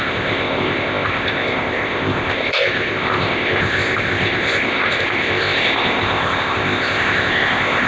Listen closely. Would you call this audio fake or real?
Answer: fake